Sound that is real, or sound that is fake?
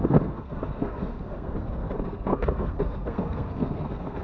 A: fake